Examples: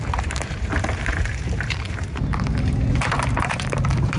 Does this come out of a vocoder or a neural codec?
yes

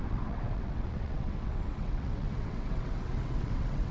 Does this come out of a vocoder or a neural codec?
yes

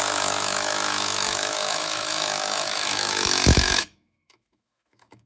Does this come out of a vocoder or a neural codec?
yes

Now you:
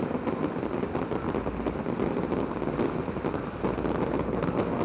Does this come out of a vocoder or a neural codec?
no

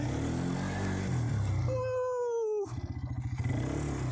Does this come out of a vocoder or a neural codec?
no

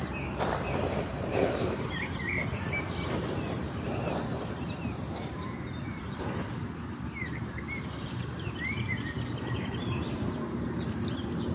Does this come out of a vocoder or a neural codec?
yes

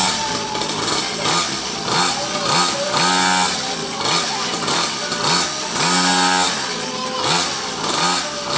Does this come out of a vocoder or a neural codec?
no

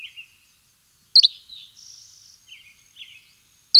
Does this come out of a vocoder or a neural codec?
no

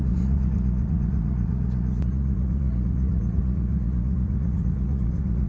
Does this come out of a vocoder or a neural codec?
yes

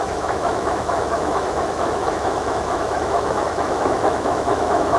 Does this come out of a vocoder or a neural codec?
yes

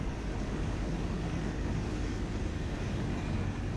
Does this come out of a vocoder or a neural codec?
yes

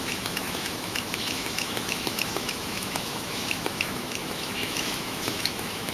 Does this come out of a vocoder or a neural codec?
yes